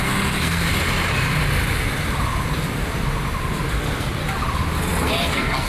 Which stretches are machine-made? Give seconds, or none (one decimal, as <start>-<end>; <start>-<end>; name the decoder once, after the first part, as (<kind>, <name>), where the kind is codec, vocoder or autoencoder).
0.0-0.7 (codec, SNAC); 3.7-4.2; 5.0-5.7